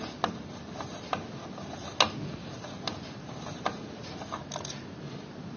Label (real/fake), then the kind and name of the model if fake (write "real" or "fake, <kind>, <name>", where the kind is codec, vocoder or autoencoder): real